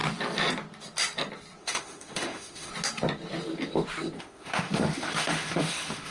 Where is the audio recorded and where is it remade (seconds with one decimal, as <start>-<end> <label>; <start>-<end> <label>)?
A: 0.0-1.6 recorded; 1.6-2.7 remade; 2.7-4.2 recorded; 4.2-6.1 remade